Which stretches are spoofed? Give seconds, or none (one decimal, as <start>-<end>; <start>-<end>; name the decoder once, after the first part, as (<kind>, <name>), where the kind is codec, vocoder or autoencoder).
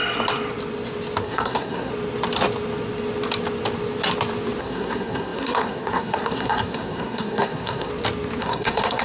1.2-1.9 (codec, SNAC); 4.6-7.9; 8.4-9.0